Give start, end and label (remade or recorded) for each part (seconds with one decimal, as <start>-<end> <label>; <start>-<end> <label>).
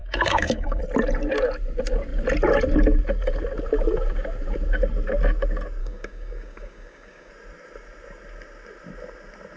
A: 0.0-0.8 remade; 0.8-5.8 recorded; 5.8-7.3 remade; 7.3-9.6 recorded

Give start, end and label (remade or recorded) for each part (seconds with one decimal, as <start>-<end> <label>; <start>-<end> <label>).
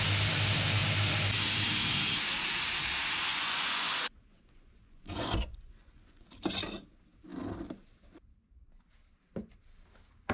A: 0.0-3.3 recorded; 3.3-6.3 remade; 6.3-10.3 recorded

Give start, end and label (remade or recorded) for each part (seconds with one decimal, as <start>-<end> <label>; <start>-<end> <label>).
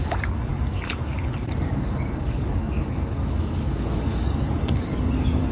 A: 0.0-5.5 remade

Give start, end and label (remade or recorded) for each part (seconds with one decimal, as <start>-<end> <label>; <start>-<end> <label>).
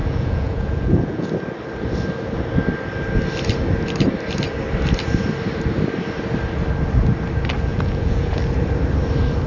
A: 0.0-1.3 remade; 1.3-7.7 recorded; 7.7-8.4 remade; 8.4-9.5 recorded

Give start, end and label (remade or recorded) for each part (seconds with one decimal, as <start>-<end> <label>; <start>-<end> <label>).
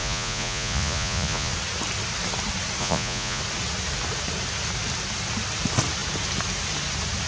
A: 0.0-1.5 remade; 1.5-2.8 recorded; 2.8-3.4 remade; 3.4-7.3 recorded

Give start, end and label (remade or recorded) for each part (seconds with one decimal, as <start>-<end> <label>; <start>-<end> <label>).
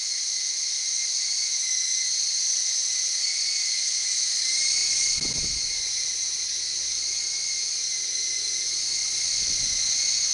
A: 0.0-10.3 recorded